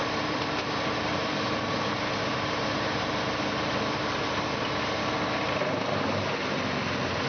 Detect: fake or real real